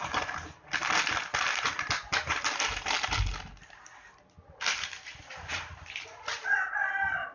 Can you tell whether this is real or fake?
real